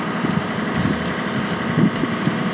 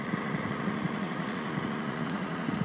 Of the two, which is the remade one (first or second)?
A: second